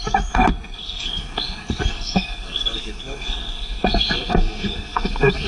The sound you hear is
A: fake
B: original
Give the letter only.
A